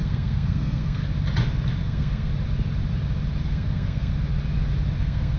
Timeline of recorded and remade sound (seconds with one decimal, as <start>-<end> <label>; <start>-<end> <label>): 0.0-1.0 remade; 1.0-1.8 recorded; 1.8-2.3 remade; 2.3-3.4 recorded; 3.4-4.1 remade; 4.1-5.0 recorded; 5.0-5.4 remade